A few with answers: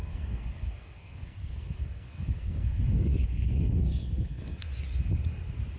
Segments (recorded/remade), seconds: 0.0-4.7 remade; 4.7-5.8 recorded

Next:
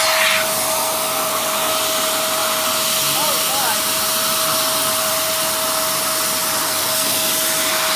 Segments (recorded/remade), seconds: 0.0-0.7 recorded; 0.7-1.7 remade; 1.7-6.6 recorded; 6.6-7.3 remade; 7.3-8.0 recorded